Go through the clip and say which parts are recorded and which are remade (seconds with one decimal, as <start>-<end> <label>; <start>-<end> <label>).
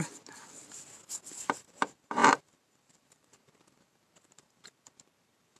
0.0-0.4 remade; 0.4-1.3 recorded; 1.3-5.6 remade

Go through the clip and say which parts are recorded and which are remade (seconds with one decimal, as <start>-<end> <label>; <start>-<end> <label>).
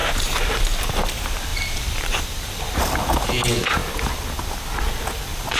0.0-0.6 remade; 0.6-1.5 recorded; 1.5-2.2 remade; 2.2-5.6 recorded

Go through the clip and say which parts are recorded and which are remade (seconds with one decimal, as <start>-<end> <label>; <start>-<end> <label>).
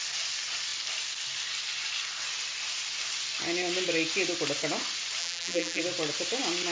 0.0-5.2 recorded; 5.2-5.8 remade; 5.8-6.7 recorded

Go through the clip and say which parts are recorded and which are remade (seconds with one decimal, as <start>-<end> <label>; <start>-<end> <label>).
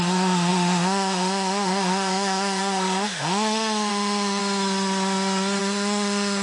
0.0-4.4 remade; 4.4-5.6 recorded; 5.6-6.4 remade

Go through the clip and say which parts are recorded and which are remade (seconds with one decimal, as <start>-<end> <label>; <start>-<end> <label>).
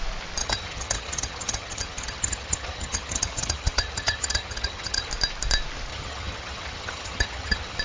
0.0-0.4 recorded; 0.4-5.1 remade; 5.1-5.9 recorded; 5.9-7.8 remade